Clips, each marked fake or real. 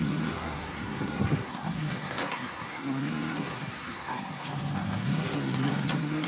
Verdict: fake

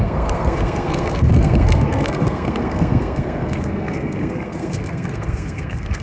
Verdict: fake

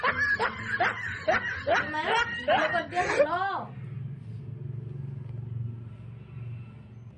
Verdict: real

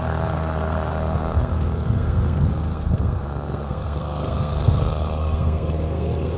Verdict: fake